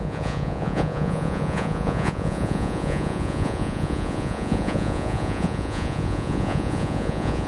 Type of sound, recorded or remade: remade